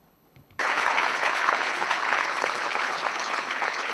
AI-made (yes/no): yes